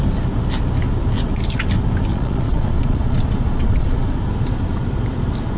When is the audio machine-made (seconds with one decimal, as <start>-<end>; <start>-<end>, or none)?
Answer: 2.1-4.0